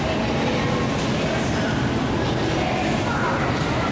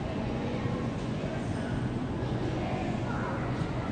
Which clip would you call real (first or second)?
first